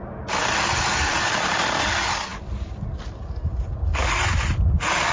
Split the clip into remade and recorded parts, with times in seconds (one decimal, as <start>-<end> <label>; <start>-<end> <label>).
0.0-1.1 recorded; 1.1-1.6 remade; 1.6-5.1 recorded